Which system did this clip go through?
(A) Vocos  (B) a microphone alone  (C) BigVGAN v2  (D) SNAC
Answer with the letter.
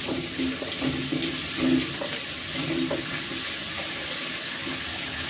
B